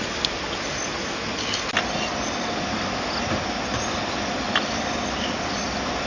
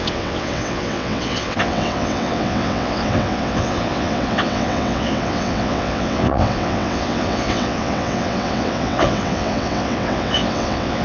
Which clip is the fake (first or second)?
second